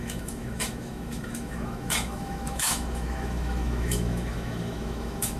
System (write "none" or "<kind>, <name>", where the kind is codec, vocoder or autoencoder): autoencoder, DAC-VAE